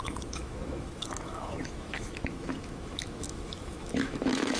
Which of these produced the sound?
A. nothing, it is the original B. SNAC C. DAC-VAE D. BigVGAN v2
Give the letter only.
C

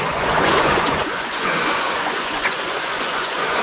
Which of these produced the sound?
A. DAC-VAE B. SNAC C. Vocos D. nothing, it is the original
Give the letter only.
C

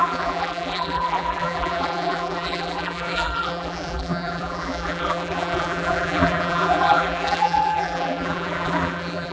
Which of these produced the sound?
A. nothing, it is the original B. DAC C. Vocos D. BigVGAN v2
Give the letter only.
D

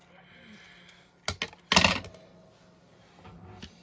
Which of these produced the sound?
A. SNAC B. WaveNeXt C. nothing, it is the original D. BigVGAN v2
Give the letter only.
C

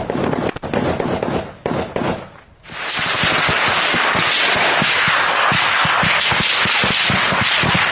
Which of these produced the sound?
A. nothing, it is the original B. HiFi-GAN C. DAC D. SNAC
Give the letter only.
A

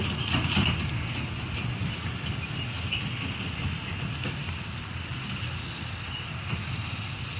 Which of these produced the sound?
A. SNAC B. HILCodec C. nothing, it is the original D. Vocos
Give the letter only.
C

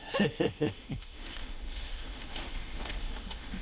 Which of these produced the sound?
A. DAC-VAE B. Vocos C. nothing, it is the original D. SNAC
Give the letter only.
A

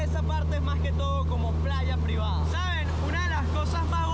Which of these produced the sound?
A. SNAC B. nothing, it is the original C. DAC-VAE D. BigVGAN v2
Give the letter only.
B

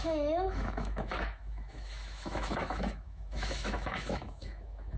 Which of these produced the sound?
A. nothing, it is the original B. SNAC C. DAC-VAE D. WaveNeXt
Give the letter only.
C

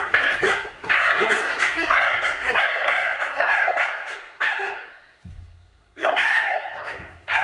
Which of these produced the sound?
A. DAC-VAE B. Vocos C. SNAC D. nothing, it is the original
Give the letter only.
C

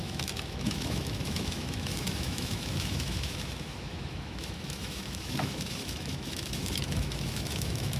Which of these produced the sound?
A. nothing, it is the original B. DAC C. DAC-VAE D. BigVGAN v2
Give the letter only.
C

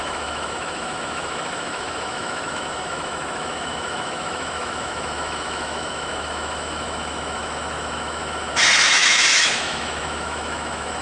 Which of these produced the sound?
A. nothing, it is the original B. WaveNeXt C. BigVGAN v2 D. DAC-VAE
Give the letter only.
D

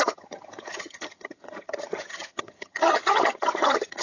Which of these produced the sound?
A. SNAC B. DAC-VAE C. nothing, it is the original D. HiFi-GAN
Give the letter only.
D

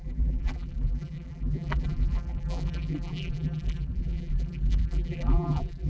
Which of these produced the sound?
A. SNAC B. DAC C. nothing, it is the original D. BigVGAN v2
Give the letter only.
D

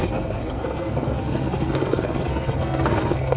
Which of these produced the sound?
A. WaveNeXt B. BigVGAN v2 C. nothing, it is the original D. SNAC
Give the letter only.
D